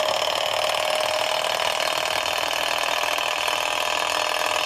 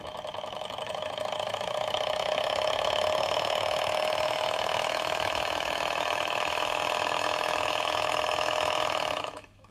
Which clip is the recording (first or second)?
first